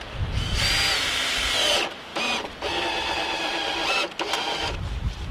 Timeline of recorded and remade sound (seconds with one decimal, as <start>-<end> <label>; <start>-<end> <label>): 0.0-5.3 recorded